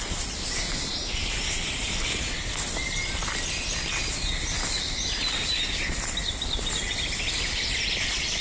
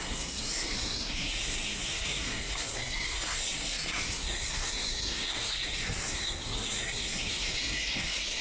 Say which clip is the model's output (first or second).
second